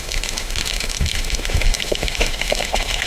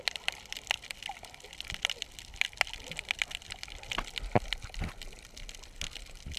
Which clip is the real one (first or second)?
second